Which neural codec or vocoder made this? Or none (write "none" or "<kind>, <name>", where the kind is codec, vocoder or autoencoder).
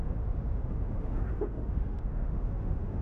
autoencoder, DAC-VAE